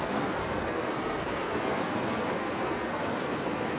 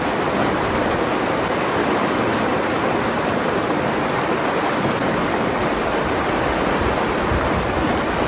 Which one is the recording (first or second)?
second